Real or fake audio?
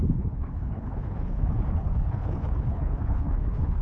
fake